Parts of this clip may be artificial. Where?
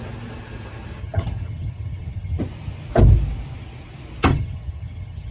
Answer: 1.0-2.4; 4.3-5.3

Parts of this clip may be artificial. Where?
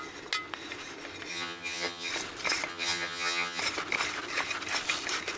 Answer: 1.3-2.1; 2.7-3.6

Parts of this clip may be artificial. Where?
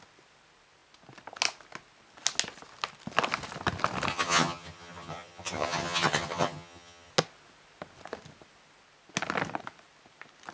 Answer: 4.1-7.1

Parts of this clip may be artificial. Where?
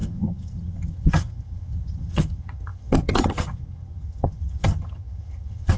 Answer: 0.0-5.8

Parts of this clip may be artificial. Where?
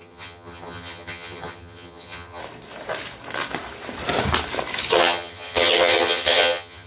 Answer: 0.0-2.4; 4.9-6.9